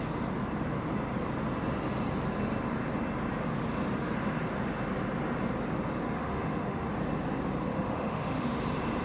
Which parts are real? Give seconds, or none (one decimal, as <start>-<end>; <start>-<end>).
0.0-6.2; 6.9-7.7; 8.6-9.0